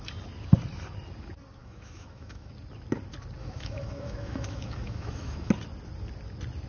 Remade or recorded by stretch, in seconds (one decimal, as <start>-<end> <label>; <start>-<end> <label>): 0.0-1.6 recorded; 1.6-2.5 remade; 2.5-3.4 recorded; 3.4-5.5 remade; 5.5-6.7 recorded